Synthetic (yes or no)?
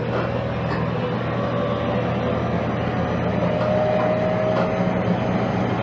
no